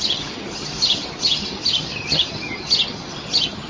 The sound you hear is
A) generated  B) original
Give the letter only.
A